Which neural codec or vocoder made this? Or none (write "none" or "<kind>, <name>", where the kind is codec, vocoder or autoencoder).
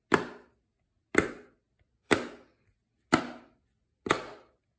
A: none